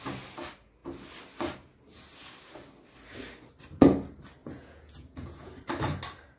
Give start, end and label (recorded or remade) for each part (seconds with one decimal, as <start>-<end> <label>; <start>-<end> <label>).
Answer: 0.0-4.4 recorded; 4.4-5.5 remade; 5.5-6.4 recorded